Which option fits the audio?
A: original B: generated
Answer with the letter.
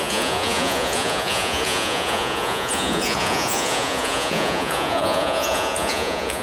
B